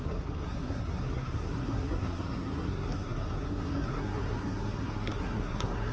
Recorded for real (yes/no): no